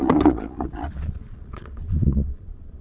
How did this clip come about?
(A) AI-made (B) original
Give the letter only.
A